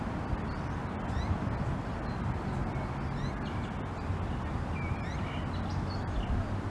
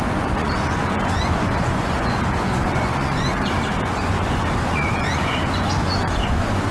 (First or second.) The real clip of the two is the first